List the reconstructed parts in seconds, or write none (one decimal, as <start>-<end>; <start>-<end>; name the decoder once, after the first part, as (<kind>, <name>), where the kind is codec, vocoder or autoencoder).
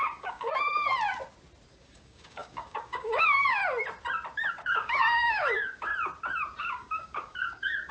0.0-0.9 (codec, DAC); 1.7-3.6; 4.5-5.9; 6.6-7.9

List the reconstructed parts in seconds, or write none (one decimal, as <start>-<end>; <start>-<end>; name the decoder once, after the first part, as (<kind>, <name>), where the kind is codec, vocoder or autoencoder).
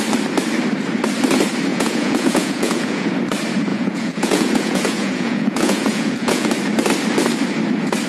1.7-3.1 (vocoder, Vocos); 3.7-6.5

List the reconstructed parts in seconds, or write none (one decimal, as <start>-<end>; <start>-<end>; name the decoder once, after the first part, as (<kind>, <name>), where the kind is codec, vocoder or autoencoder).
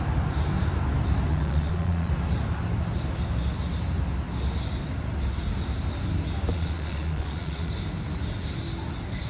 1.3-2.1 (vocoder, Vocos); 6.5-7.7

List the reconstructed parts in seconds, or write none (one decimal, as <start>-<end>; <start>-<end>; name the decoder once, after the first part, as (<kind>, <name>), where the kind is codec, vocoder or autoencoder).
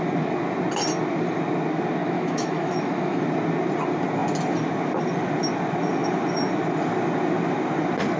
2.0-3.2 (autoencoder, DAC-VAE)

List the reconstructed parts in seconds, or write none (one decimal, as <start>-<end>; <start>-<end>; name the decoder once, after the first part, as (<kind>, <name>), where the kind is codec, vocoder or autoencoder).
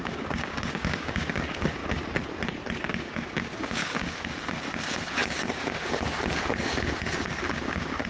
0.0-1.8 (codec, DAC); 2.8-8.1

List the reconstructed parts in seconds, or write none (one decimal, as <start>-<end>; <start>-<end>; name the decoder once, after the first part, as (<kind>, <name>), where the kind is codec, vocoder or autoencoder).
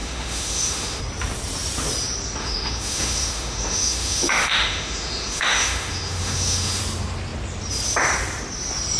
0.0-1.0 (autoencoder, DAC-VAE); 2.4-6.8